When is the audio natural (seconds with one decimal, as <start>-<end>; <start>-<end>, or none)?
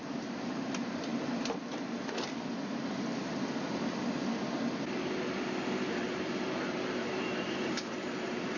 1.1-5.7